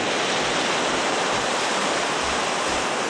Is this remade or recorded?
recorded